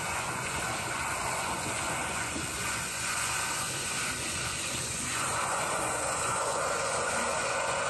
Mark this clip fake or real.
fake